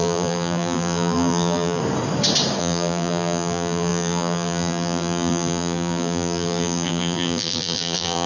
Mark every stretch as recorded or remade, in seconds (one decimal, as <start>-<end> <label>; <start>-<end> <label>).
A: 0.0-1.8 remade; 1.8-2.6 recorded; 2.6-8.3 remade

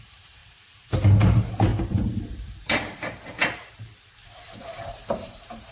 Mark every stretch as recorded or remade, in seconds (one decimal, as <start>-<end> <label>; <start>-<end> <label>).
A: 0.0-0.4 remade; 0.4-1.2 recorded; 1.2-1.7 remade; 1.7-2.3 recorded; 2.3-3.4 remade; 3.4-4.6 recorded; 4.6-5.7 remade

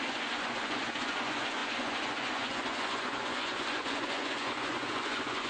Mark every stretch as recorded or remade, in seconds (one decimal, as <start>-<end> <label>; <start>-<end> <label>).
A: 0.0-5.5 remade

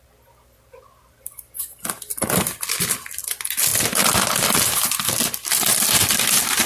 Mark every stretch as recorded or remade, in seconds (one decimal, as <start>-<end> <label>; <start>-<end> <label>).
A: 0.0-6.7 recorded

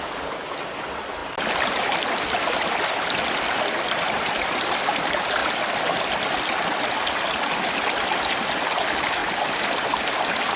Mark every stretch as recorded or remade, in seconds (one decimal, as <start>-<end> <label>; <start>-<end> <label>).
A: 0.0-10.6 recorded

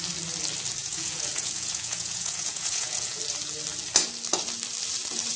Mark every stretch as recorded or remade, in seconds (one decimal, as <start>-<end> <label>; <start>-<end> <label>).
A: 0.0-0.8 recorded; 0.8-3.2 remade; 3.2-5.4 recorded